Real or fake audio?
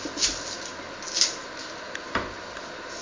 real